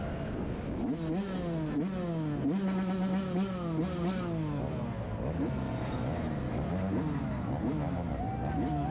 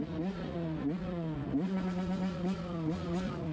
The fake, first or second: second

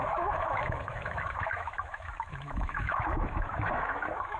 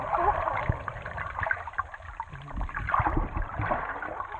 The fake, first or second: first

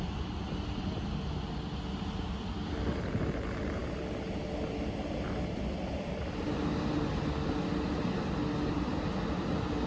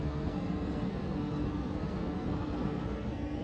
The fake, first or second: second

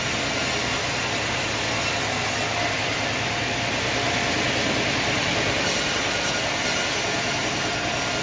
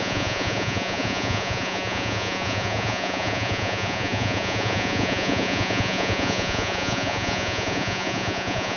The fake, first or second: second